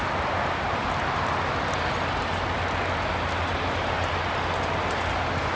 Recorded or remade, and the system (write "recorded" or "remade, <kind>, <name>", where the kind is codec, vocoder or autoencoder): recorded